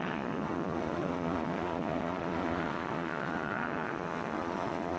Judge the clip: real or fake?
fake